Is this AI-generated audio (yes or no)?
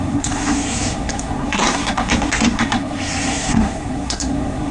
yes